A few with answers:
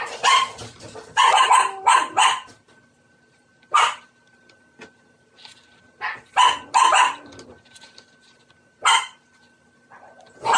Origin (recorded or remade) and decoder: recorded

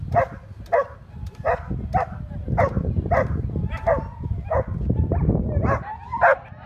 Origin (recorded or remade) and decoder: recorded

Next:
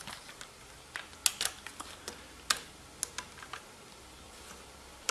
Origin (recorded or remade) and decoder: recorded